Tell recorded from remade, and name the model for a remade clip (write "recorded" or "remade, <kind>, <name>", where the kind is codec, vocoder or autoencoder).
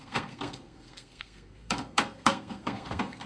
remade, codec, SNAC